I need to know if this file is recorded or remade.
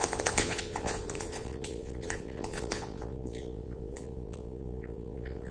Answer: remade